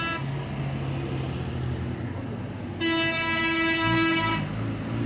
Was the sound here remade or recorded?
recorded